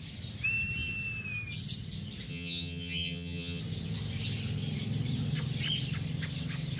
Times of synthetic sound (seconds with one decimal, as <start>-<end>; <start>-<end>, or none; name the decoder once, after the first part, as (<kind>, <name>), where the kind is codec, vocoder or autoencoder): 2.3-3.6 (vocoder, HiFi-GAN)